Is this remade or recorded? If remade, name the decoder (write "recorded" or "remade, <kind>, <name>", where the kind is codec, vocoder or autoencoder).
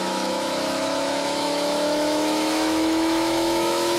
remade, autoencoder, DAC-VAE